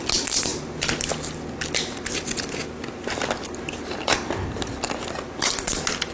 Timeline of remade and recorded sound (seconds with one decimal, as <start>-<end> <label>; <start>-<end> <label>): 0.0-6.1 recorded